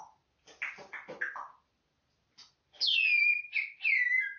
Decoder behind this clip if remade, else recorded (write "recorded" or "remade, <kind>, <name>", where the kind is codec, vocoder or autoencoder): recorded